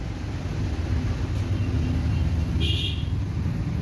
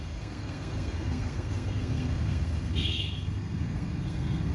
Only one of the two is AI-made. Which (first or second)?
second